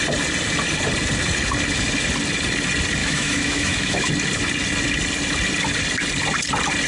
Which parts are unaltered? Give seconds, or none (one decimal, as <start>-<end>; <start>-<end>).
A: 0.0-3.0; 4.1-6.9